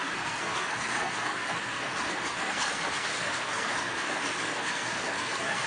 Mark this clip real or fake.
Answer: fake